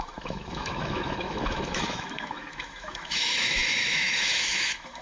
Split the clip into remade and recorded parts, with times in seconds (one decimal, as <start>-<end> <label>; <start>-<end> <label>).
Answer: 0.0-5.0 remade